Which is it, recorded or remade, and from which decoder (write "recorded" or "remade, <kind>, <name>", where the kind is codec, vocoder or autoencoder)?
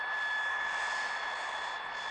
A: recorded